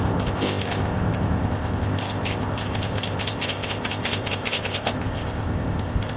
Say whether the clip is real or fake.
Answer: fake